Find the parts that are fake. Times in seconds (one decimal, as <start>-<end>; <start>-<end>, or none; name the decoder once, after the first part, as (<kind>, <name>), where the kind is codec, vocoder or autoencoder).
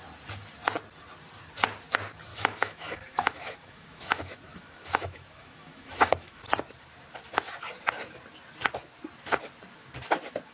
2.3-6.4 (autoencoder, DAC-VAE)